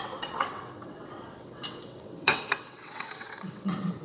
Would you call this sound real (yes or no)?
no